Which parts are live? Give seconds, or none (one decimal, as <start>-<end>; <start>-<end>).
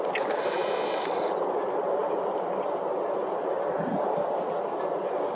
0.0-5.3